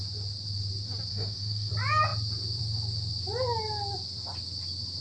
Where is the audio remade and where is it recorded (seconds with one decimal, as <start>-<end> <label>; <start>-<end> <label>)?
0.0-1.1 recorded; 1.1-1.7 remade; 1.7-5.0 recorded